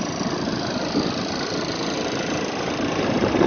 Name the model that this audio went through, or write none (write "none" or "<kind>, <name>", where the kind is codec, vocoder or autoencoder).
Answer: none